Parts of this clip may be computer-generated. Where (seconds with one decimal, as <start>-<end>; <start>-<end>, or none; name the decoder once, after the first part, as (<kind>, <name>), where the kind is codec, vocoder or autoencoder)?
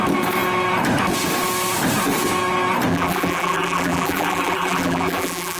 2.9-5.6 (vocoder, BigVGAN v2)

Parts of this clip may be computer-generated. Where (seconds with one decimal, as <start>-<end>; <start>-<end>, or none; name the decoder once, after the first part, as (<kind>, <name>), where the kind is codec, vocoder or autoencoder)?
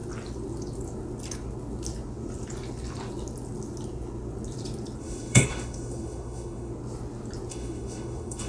5.0-6.7 (autoencoder, DAC-VAE); 7.5-8.5